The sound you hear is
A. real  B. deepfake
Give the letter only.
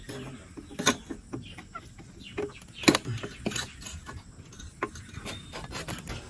A